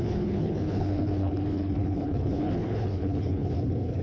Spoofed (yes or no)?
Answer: yes